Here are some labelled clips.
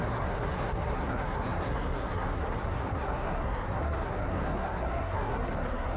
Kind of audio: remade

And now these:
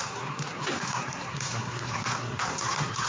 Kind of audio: remade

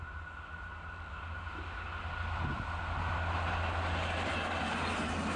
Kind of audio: recorded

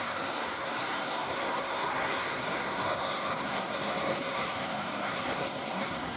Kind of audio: remade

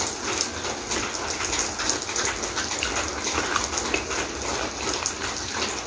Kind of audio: recorded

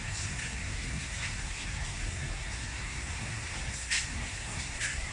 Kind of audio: remade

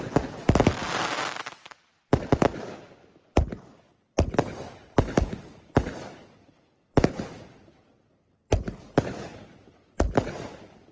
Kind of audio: recorded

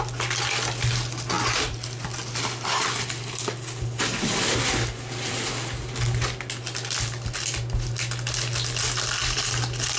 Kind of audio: recorded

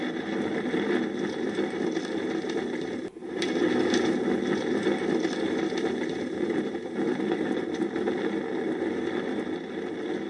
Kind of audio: recorded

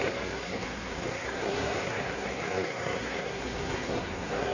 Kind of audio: remade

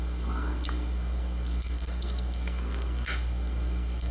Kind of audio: remade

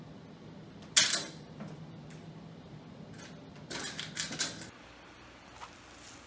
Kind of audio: recorded